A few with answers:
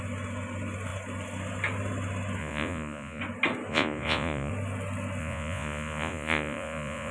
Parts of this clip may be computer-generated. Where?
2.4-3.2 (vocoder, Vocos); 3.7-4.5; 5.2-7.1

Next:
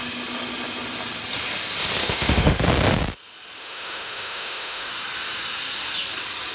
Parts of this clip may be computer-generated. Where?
2.0-2.6 (autoencoder, DAC-VAE); 3.6-4.9